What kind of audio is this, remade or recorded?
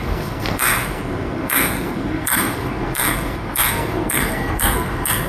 remade